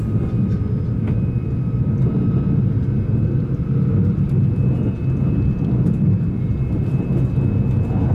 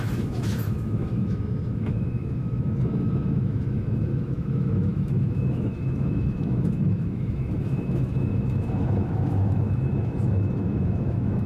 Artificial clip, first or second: second